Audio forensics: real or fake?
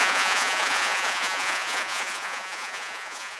fake